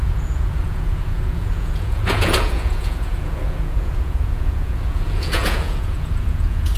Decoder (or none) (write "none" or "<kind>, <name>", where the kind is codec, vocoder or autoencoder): vocoder, Vocos